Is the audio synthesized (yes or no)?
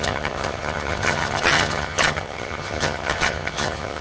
yes